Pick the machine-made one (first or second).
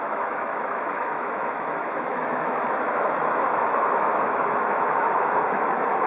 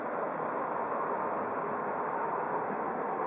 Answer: first